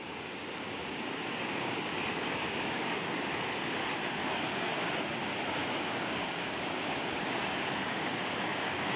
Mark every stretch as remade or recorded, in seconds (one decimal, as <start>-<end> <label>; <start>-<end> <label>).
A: 0.0-3.3 remade; 3.3-4.2 recorded; 4.2-4.9 remade; 4.9-5.6 recorded; 5.6-9.0 remade